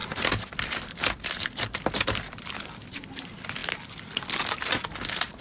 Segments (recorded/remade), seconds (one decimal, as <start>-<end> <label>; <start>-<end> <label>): 0.0-5.4 remade